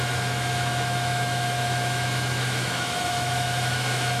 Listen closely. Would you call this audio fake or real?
fake